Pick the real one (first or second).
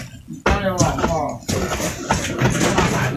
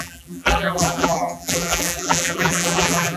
first